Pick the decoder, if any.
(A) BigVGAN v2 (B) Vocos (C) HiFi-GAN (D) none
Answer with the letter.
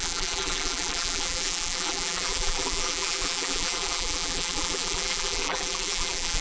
A